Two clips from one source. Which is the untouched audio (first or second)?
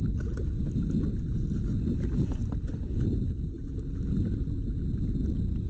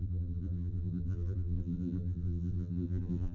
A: first